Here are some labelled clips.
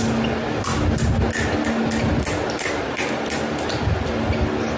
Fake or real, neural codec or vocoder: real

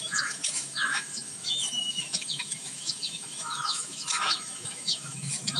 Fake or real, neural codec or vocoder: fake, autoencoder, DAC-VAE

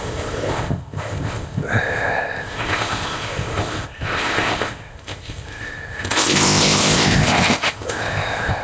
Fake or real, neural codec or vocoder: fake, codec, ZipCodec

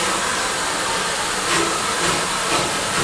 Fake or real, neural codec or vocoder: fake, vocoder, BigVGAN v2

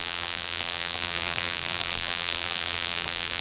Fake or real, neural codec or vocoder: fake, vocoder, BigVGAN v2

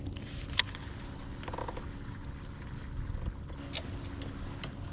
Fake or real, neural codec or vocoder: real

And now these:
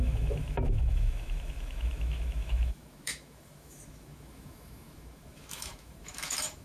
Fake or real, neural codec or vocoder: fake, autoencoder, DAC-VAE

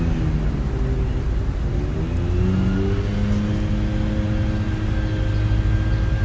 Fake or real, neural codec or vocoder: real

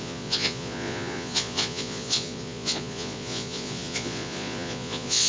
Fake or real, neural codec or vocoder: fake, vocoder, Vocos